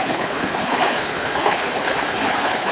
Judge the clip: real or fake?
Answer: fake